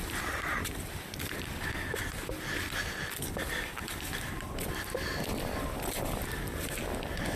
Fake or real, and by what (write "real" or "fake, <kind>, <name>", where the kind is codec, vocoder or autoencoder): fake, vocoder, BigVGAN v2